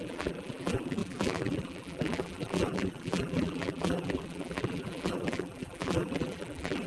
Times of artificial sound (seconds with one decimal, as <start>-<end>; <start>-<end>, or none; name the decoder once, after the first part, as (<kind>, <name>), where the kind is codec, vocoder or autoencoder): 0.0-6.9 (vocoder, BigVGAN v2)